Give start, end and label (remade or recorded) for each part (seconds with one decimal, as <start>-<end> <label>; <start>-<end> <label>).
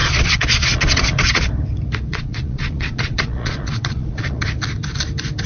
0.0-1.5 remade; 1.5-2.1 recorded; 2.1-4.4 remade; 4.4-5.5 recorded